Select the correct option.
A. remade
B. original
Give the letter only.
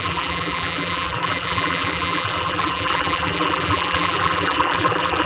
A